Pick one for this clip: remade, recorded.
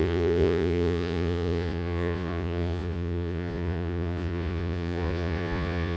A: remade